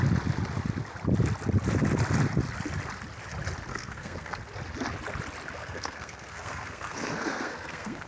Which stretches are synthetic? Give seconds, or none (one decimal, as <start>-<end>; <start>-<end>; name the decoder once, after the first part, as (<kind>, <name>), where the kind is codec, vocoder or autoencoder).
3.7-4.4 (codec, SNAC); 5.6-8.1